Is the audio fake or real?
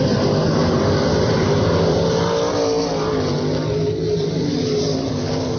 real